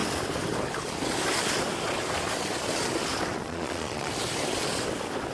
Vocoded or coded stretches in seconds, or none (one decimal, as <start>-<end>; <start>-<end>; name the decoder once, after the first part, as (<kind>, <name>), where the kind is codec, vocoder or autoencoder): 3.4-4.1 (vocoder, Vocos)